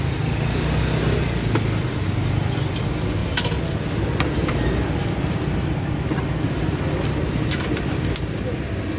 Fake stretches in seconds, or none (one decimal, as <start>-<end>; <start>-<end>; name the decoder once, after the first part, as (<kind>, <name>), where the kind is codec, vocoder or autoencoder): none